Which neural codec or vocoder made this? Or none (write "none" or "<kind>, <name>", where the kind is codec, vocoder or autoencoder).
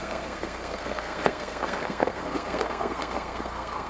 codec, SNAC